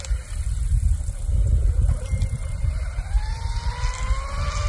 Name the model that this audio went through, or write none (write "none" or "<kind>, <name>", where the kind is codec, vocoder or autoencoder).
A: none